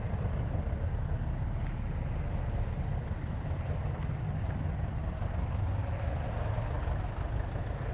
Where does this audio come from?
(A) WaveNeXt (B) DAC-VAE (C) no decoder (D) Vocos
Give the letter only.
C